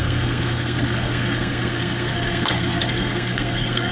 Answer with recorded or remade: remade